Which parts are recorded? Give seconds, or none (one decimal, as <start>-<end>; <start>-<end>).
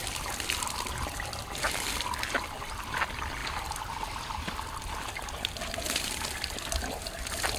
0.0-7.6